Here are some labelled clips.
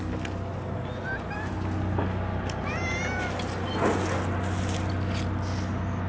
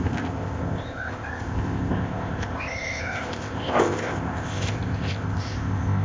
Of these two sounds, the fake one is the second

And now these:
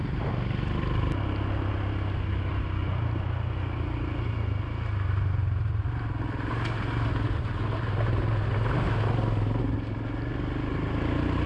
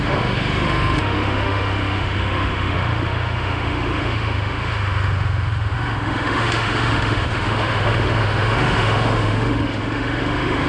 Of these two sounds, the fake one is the second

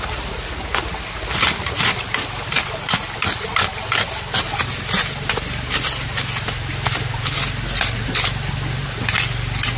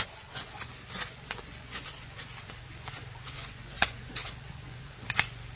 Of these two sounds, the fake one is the second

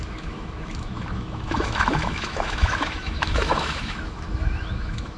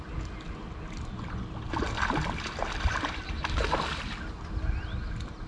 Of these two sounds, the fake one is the first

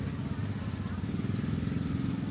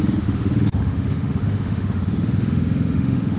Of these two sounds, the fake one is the second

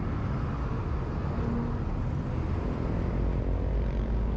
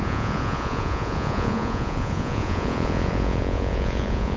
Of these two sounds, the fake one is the second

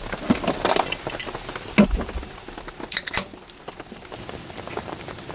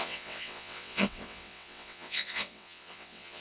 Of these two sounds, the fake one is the second